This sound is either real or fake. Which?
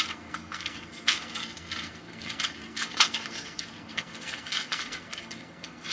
fake